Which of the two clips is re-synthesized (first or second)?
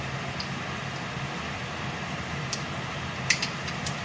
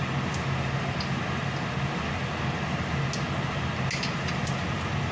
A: first